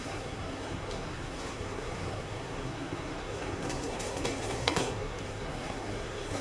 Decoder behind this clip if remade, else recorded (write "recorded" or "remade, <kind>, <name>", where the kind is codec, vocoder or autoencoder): remade, codec, SNAC